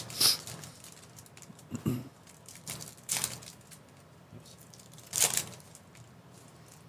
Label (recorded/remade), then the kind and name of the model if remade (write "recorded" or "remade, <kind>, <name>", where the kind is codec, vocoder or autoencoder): recorded